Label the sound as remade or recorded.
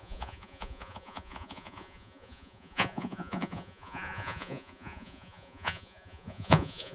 remade